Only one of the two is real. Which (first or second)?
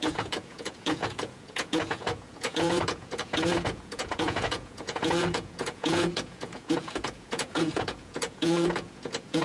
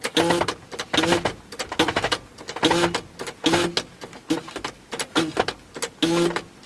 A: second